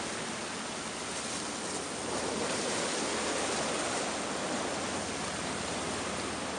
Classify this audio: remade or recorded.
recorded